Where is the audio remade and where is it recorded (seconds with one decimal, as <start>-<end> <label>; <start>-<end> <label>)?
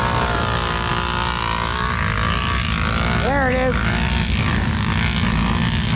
0.0-6.0 recorded